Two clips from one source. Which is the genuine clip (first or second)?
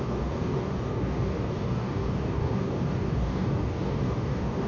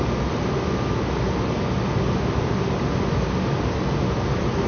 second